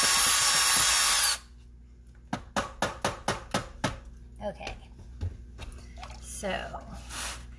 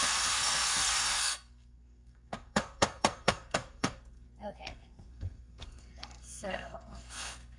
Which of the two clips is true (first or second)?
first